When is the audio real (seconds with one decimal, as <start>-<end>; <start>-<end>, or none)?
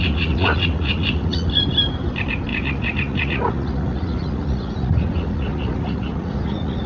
1.6-2.5